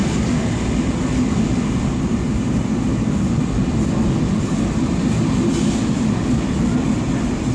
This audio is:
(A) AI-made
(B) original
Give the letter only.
B